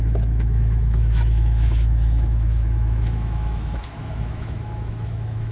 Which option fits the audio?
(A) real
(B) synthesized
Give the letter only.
B